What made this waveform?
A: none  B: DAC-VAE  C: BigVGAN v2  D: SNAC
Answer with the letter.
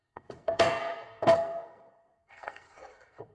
D